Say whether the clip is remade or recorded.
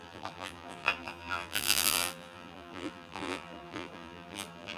remade